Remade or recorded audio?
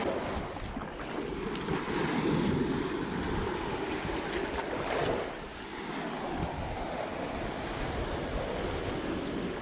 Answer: recorded